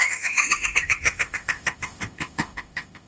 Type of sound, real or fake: fake